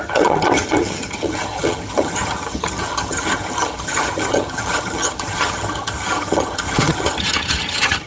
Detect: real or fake fake